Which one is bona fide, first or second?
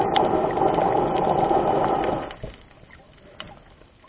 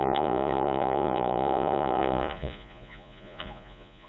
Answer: first